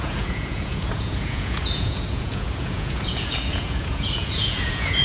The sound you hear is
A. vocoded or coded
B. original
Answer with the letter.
A